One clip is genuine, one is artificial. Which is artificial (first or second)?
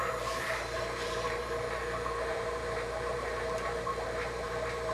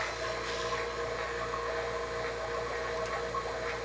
first